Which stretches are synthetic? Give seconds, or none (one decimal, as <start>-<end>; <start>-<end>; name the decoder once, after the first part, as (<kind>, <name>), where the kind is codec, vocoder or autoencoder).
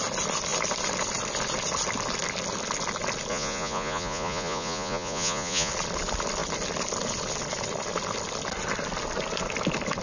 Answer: 3.3-5.7 (vocoder, Vocos)